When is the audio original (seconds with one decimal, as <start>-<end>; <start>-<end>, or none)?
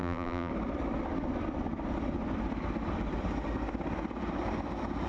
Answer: 0.5-5.1